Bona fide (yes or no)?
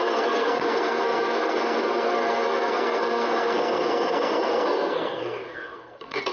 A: no